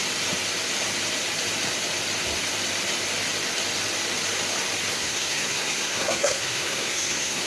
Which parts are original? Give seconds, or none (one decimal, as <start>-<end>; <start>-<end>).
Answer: 0.0-4.9